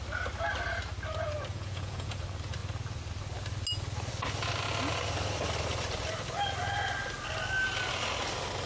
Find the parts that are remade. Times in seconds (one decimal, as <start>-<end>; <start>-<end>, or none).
1.5-2.2